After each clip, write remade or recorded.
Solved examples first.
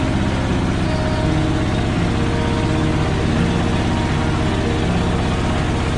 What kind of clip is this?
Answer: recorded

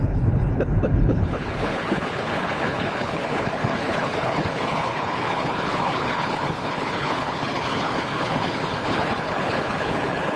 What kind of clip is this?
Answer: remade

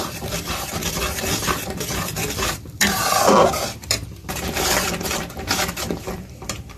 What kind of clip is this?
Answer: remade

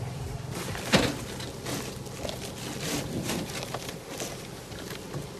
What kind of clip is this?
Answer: recorded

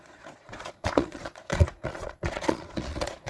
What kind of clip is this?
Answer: remade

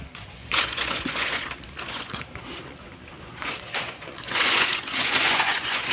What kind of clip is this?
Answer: remade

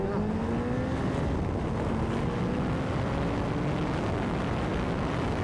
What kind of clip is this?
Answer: recorded